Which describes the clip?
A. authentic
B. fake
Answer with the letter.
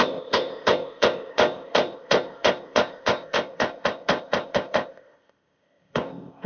B